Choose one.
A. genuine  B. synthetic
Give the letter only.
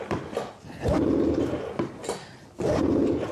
A